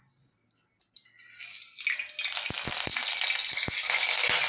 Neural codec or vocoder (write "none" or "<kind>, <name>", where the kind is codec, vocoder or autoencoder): none